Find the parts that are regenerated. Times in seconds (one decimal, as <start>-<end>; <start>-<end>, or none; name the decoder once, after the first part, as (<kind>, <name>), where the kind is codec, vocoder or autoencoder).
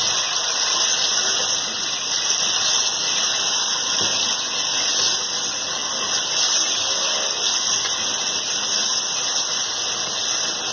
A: none